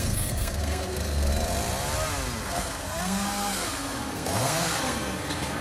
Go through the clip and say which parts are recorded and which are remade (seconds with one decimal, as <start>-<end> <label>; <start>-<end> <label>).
0.0-1.3 remade; 1.3-2.4 recorded; 2.4-5.6 remade